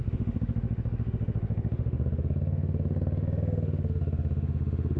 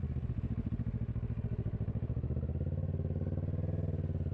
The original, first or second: second